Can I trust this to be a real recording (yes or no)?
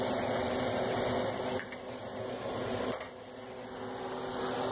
yes